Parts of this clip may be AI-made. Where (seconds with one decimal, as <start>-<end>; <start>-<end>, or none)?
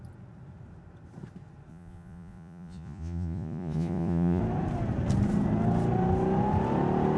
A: 1.7-4.4